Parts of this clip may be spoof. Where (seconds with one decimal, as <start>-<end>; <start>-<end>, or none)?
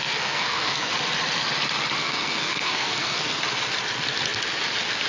0.0-0.9; 2.0-3.4